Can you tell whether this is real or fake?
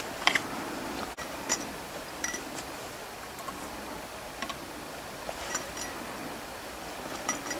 fake